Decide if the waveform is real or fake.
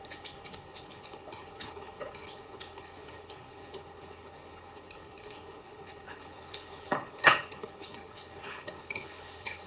fake